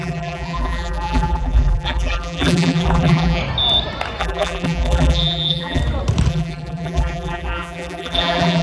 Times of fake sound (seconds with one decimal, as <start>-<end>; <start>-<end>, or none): 0.0-3.4; 4.2-5.8; 6.3-8.6